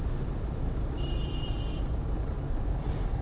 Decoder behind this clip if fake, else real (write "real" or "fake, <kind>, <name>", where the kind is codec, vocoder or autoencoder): fake, vocoder, BigVGAN v2